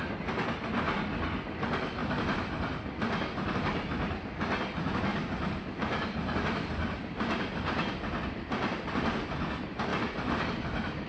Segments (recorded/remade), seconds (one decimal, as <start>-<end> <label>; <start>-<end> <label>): 0.0-11.1 recorded